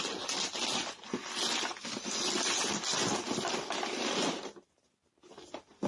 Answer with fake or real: real